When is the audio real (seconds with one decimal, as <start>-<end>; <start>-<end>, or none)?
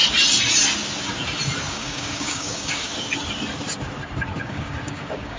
0.0-1.7; 2.9-4.4